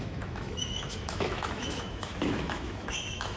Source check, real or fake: fake